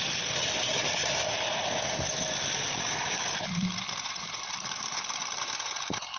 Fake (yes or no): yes